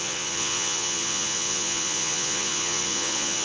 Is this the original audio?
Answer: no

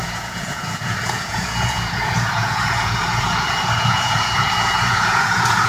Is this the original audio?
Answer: no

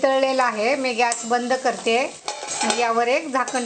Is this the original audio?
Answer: yes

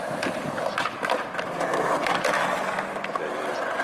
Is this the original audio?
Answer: yes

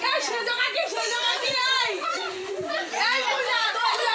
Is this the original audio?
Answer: no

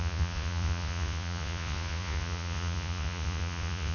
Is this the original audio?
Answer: no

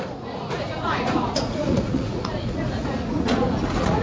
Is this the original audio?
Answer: no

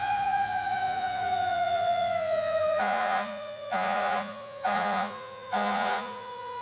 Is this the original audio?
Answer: no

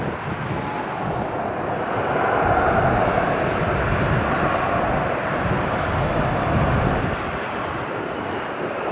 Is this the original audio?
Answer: yes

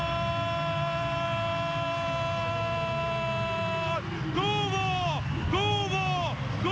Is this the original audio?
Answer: yes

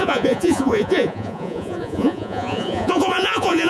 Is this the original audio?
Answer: no